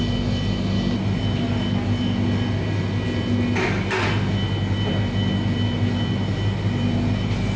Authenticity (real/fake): real